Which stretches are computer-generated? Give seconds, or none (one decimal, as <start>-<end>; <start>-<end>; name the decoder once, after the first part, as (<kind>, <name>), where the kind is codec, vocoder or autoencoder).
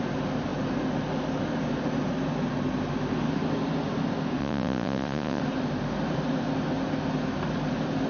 4.4-5.4 (vocoder, Vocos)